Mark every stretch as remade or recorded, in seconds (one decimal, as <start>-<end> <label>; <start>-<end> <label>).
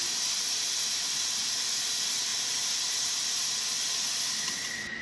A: 0.0-0.6 remade; 0.6-2.3 recorded; 2.3-3.1 remade; 3.1-5.0 recorded